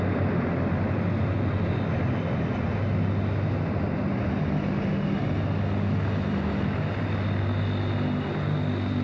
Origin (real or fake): real